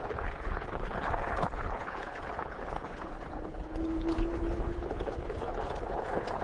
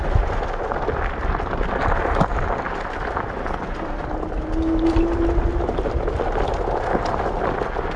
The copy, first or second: first